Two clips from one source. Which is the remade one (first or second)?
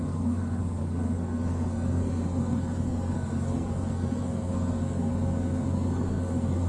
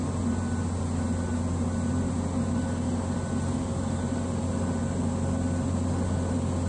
first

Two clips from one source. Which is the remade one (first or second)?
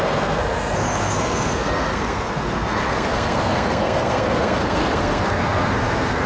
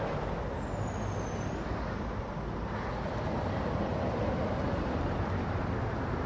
first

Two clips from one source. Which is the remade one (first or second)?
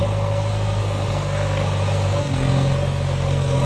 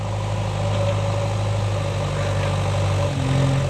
first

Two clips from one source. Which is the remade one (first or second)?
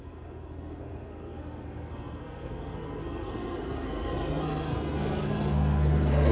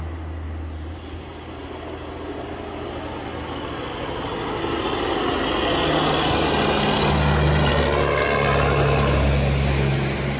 first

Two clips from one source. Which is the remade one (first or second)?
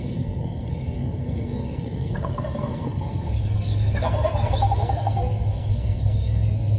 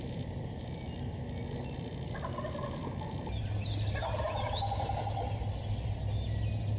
first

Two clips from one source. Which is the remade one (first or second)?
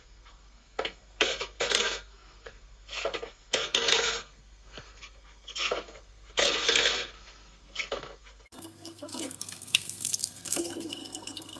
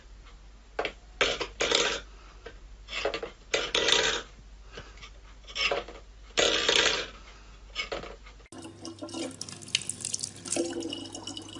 first